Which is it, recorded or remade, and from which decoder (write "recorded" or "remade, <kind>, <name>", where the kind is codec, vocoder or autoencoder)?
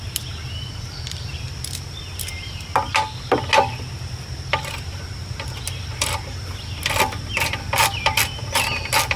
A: recorded